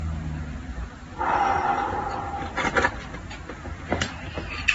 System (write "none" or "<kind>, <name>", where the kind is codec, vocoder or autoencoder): none